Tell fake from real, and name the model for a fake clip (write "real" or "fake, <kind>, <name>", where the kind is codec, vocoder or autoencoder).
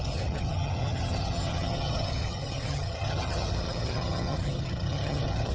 fake, vocoder, HiFi-GAN